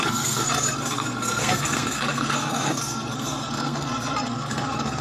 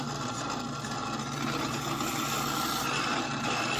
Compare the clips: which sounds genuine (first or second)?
second